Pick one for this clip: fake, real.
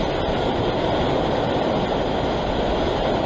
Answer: real